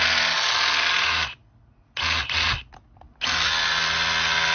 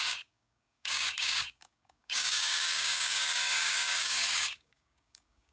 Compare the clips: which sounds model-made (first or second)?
second